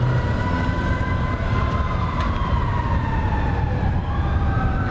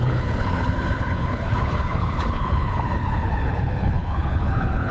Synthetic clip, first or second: second